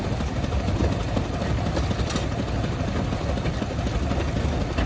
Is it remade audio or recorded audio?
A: recorded